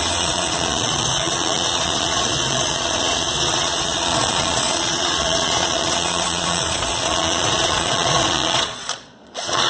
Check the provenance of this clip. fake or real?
fake